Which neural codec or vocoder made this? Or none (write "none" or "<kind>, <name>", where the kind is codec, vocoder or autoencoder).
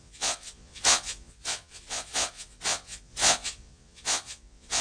vocoder, Vocos